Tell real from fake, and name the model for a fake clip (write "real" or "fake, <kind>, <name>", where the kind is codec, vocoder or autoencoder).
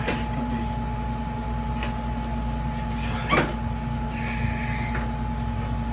real